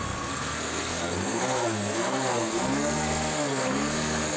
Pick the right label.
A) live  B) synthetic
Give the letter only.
B